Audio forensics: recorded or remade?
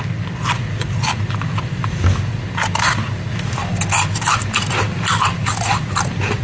recorded